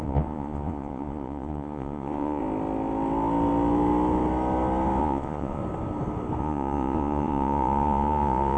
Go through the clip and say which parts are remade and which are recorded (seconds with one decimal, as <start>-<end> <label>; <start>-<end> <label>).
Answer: 0.0-2.4 remade; 2.4-5.0 recorded; 5.0-5.6 remade; 5.6-6.4 recorded; 6.4-8.6 remade